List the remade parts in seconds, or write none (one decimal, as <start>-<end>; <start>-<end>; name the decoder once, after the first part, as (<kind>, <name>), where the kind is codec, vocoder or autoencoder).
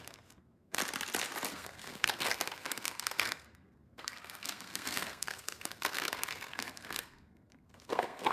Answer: 0.0-0.8 (codec, SNAC); 1.5-8.3